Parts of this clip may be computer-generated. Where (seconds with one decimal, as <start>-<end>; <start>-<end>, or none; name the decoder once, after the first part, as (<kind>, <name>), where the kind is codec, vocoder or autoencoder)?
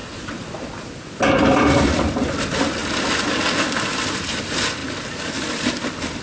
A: 0.0-2.8 (vocoder, BigVGAN v2); 4.0-6.2